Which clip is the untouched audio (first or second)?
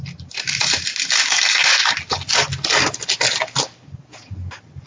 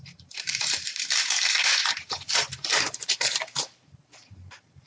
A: first